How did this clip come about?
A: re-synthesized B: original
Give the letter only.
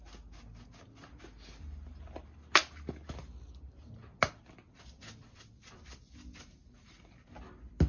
B